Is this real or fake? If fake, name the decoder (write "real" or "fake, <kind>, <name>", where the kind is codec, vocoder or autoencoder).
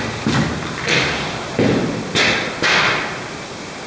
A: real